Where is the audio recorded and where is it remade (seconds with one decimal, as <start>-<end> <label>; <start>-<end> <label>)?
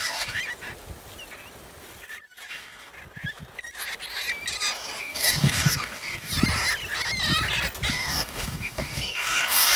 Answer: 0.0-0.4 remade; 0.4-2.5 recorded; 2.5-2.9 remade; 2.9-5.0 recorded; 5.0-6.3 remade; 6.3-7.9 recorded; 7.9-9.8 remade